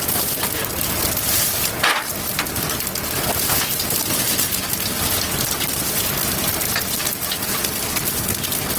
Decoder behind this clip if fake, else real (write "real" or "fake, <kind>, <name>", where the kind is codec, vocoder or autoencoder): real